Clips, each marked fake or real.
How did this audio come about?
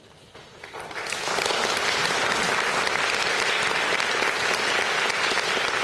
real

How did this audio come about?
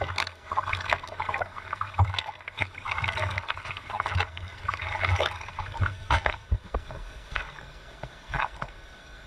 fake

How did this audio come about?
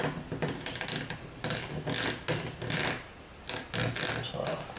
real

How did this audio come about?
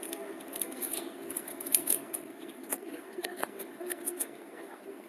fake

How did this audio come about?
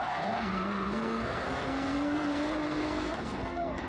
fake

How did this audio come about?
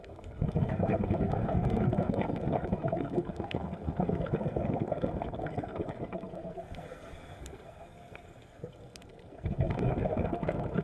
fake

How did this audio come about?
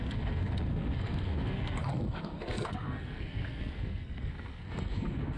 fake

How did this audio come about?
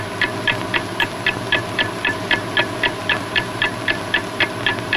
real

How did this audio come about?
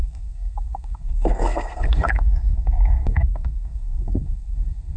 fake